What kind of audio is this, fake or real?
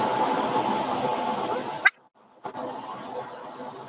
real